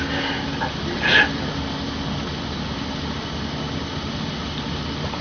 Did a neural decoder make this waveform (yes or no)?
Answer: no